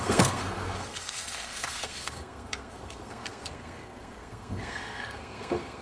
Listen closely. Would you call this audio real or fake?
fake